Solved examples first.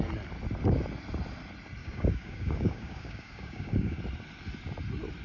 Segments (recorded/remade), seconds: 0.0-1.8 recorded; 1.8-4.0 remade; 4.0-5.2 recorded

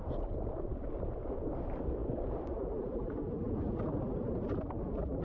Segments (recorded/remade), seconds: 0.0-5.2 recorded

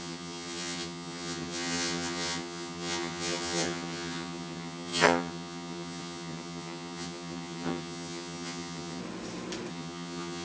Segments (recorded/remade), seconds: 0.0-9.0 remade; 9.0-9.7 recorded; 9.7-10.4 remade

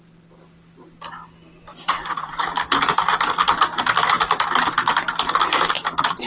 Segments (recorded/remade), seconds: 0.0-1.7 recorded; 1.7-2.5 remade; 2.5-6.3 recorded

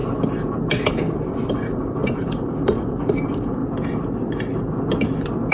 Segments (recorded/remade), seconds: 0.0-0.9 recorded; 0.9-3.6 remade; 3.6-5.5 recorded